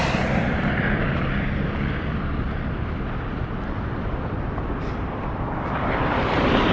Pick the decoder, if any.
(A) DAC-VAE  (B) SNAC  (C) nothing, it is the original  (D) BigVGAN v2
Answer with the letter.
D